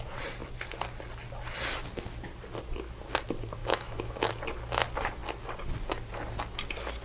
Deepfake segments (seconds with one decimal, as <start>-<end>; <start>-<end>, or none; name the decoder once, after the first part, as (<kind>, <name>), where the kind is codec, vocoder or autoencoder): 3.6-4.3 (autoencoder, DAC-VAE)

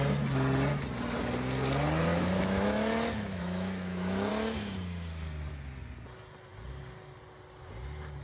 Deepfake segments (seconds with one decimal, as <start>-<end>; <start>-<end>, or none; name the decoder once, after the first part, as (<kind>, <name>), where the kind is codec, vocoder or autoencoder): 2.1-4.3 (autoencoder, DAC-VAE)